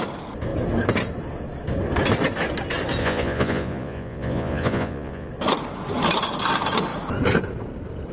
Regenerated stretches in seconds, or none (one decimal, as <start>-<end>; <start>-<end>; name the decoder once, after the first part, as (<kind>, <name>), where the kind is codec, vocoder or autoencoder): 3.0-5.3 (vocoder, Vocos)